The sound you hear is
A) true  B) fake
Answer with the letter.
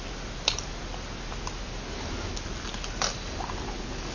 A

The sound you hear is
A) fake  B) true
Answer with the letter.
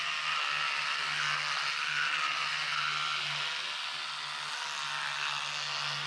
B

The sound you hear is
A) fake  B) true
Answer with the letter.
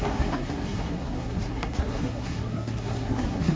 A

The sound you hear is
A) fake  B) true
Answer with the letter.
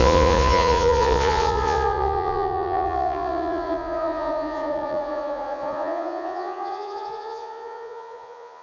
A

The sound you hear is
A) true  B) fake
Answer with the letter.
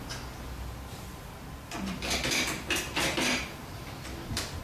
A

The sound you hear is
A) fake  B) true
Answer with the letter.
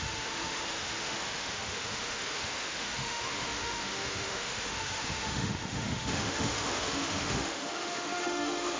A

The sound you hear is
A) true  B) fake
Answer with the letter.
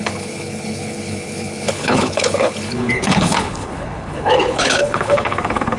B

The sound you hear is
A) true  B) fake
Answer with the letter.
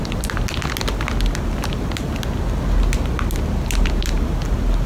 A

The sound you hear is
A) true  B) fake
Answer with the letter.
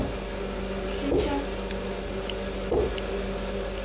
A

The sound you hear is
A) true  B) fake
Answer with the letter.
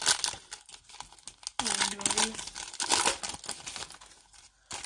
A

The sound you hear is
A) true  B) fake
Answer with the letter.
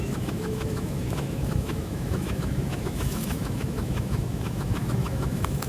B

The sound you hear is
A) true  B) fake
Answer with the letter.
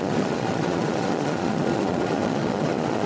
B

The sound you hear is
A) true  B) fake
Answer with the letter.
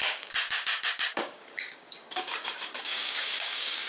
B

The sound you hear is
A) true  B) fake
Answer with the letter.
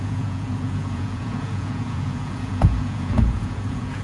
B